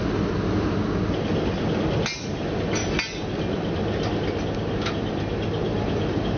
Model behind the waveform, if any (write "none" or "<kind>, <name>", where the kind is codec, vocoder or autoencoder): none